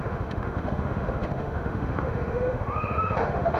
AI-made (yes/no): yes